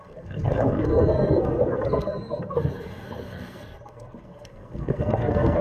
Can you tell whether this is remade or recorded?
remade